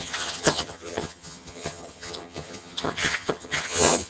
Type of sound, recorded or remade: remade